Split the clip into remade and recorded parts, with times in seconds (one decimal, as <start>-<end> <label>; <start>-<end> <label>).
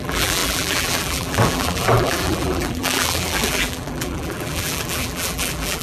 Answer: 0.0-5.8 remade